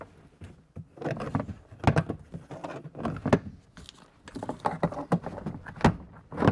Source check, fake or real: real